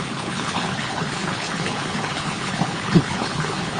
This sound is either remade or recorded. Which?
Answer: remade